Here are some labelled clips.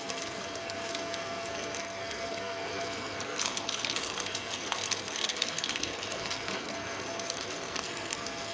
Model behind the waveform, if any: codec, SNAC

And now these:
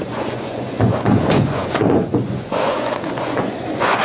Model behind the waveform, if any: vocoder, Vocos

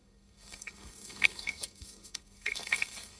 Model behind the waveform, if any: codec, SNAC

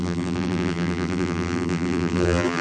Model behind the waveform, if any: vocoder, BigVGAN v2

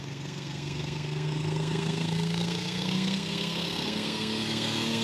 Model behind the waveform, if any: codec, SNAC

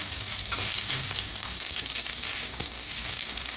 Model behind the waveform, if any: codec, DAC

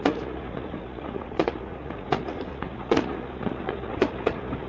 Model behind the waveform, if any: vocoder, Vocos